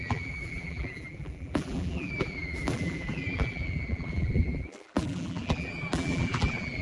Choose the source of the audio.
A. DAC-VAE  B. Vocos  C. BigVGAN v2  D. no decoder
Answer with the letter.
C